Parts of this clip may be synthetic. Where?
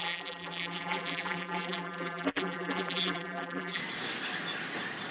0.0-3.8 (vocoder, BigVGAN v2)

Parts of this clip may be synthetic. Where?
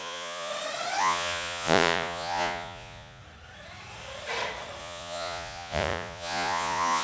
0.0-0.5 (vocoder, Vocos); 1.0-3.2; 4.8-7.0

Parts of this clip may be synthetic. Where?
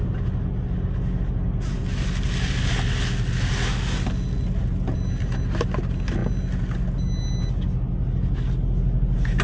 none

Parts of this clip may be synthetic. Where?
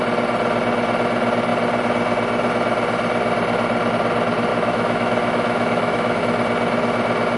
4.5-6.2 (autoencoder, DAC-VAE)